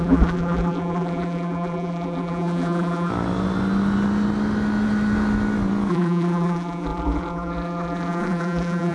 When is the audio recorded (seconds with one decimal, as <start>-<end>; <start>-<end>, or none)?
3.1-5.9